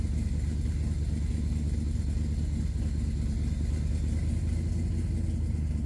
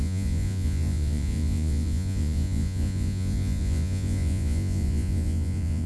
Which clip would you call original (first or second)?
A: first